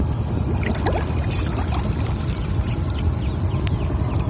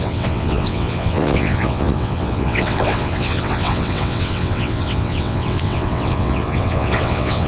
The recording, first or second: first